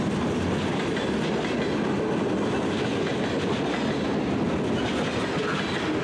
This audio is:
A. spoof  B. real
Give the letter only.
B